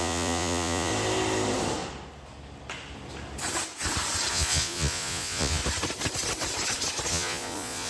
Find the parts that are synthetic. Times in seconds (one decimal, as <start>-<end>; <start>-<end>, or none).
0.0-0.9; 4.3-5.6; 7.1-7.9